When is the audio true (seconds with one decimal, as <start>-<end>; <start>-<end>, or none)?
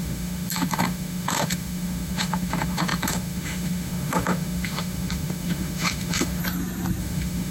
6.4-7.0